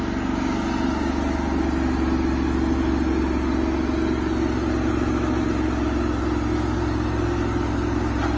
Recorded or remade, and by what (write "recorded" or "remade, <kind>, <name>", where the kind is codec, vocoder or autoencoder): recorded